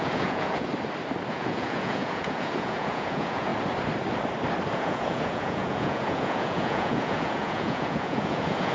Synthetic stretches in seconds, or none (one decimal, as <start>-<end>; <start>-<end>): 0.0-0.7; 1.3-3.5; 4.7-8.7